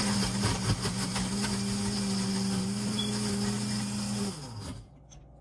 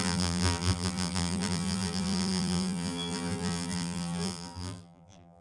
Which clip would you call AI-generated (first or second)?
second